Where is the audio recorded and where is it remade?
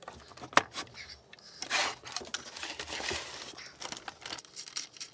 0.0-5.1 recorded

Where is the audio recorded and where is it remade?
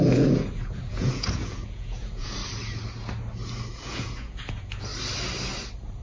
0.0-2.4 remade; 2.4-3.7 recorded; 3.7-4.9 remade; 4.9-6.0 recorded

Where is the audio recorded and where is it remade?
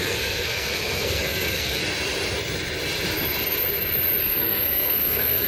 0.0-1.8 remade; 1.8-4.2 recorded; 4.2-5.5 remade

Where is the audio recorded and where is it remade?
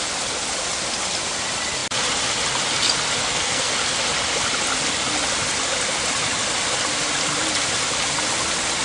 0.0-3.2 recorded; 3.2-3.7 remade; 3.7-8.8 recorded